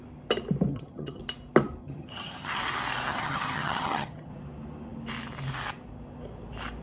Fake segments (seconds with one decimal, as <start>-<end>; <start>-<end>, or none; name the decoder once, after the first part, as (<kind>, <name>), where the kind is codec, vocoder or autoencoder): 0.7-1.2 (vocoder, HiFi-GAN); 1.8-2.6; 3.1-4.3